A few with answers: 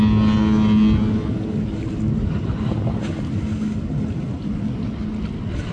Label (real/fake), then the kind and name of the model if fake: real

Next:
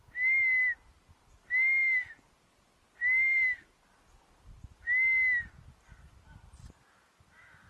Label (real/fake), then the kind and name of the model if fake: real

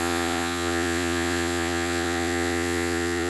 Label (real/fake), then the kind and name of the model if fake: fake, vocoder, Vocos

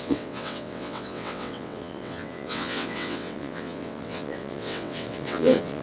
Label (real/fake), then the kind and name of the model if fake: fake, vocoder, WaveNeXt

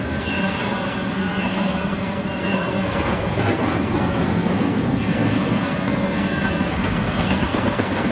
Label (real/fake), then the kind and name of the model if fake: fake, codec, SNAC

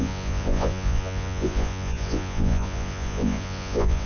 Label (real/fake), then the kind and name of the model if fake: fake, vocoder, Vocos